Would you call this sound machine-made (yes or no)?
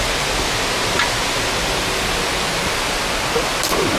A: no